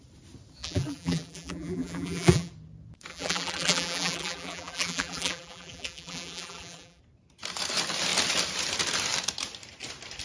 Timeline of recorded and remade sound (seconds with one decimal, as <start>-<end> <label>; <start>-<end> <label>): 0.0-0.6 recorded; 0.6-2.5 remade; 2.5-3.1 recorded; 3.1-7.0 remade; 7.0-10.2 recorded